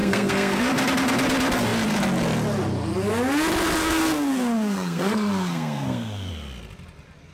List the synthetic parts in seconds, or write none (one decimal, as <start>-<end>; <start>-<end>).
0.0-0.6; 3.8-6.3